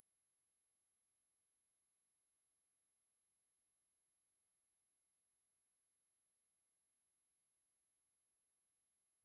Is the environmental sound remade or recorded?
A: recorded